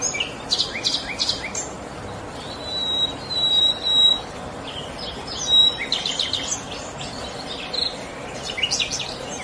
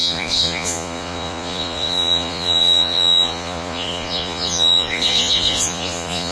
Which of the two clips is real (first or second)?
first